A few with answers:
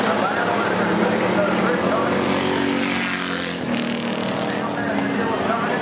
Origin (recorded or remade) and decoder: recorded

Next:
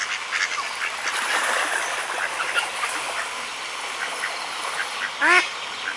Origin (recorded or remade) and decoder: recorded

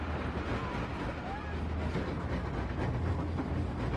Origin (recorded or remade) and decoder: recorded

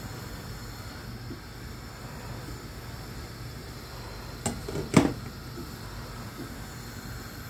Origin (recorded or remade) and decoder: recorded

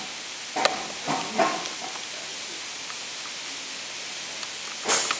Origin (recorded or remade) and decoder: recorded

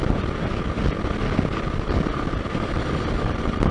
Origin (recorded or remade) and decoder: recorded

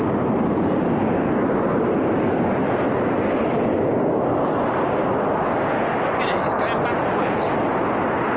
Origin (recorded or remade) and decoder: recorded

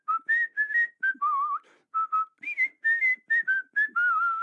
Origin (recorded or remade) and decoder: recorded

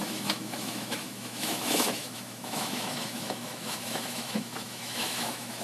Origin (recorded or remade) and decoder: remade, autoencoder, DAC-VAE